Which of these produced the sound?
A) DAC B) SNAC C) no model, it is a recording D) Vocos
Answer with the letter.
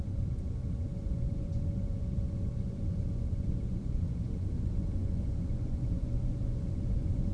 D